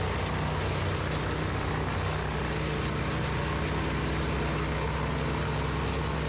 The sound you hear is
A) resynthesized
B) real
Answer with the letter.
B